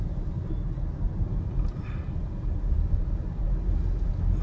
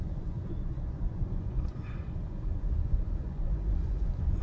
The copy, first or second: second